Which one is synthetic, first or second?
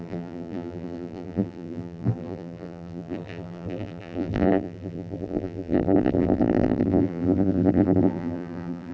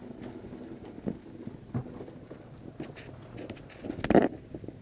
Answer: first